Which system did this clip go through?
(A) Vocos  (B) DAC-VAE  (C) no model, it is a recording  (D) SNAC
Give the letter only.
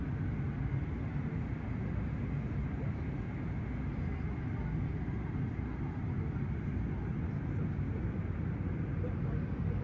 C